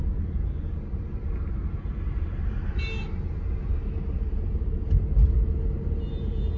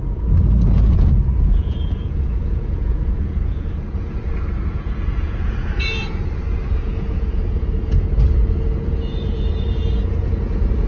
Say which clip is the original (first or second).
first